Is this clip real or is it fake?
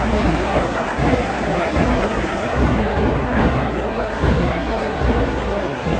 fake